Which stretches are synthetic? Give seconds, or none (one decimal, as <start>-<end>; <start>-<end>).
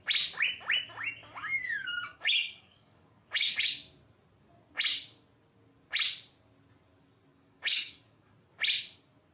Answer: 1.2-3.7; 7.3-8.3